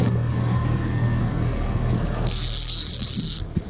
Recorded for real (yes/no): no